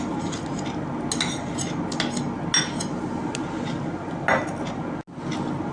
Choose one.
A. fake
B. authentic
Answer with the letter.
B